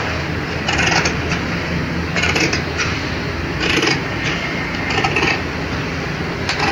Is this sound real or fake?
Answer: real